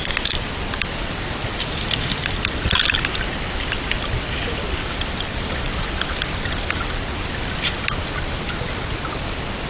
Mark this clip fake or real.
real